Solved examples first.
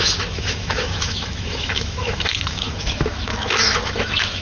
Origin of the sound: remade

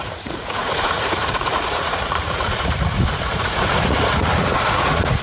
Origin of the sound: remade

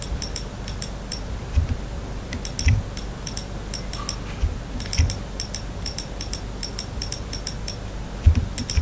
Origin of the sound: recorded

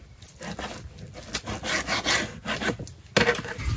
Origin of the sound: recorded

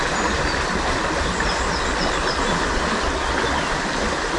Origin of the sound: recorded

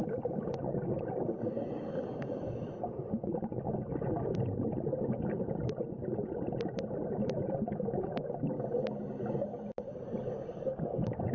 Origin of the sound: recorded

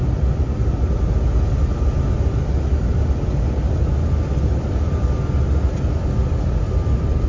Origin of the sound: recorded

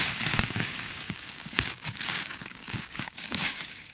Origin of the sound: remade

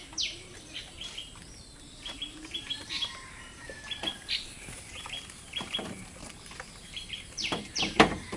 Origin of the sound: remade